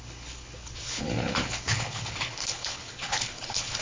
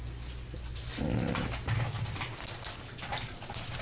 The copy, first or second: first